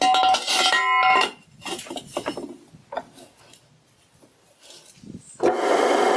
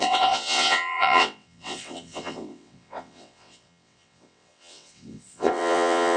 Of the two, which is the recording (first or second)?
first